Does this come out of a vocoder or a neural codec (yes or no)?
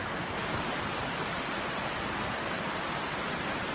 no